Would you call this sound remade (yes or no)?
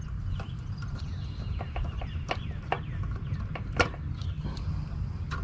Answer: no